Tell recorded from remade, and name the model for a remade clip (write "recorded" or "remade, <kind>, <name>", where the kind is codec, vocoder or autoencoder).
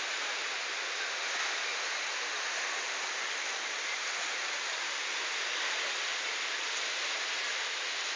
recorded